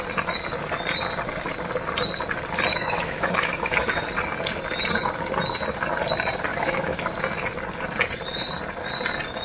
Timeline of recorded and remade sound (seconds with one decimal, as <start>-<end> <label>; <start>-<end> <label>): 0.0-2.7 recorded; 2.7-4.0 remade; 4.0-6.5 recorded; 6.5-7.1 remade; 7.1-9.4 recorded